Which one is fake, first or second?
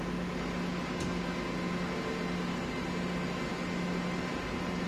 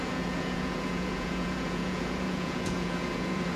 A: second